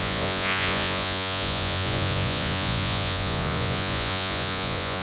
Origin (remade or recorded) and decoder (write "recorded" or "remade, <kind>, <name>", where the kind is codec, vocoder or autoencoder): remade, vocoder, Vocos